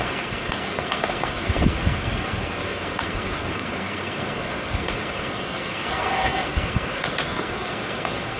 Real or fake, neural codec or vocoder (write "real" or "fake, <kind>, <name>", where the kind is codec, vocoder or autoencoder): fake, codec, SNAC